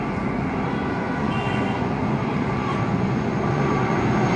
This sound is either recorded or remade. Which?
remade